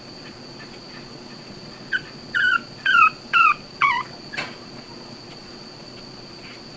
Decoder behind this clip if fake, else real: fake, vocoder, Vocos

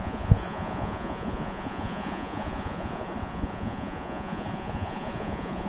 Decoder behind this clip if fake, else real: fake, vocoder, Vocos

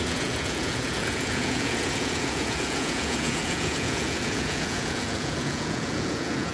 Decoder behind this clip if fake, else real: fake, vocoder, Vocos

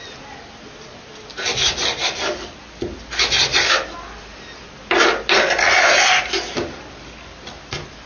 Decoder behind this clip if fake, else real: real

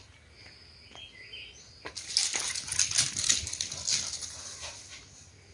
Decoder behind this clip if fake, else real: real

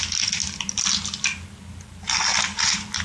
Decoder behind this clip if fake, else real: real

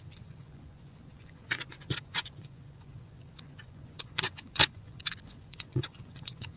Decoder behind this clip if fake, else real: fake, vocoder, Vocos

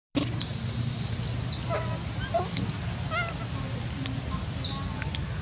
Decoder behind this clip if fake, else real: real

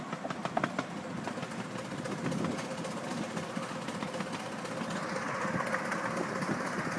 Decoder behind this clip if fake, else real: real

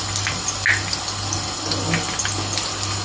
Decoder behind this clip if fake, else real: real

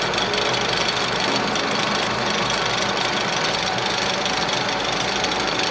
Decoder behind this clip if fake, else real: real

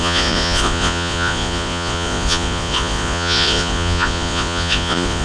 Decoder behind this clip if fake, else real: fake, vocoder, Vocos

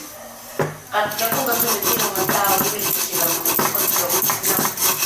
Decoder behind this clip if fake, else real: real